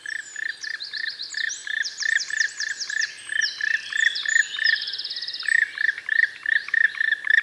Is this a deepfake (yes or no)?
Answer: no